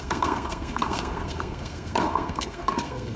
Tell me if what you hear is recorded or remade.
remade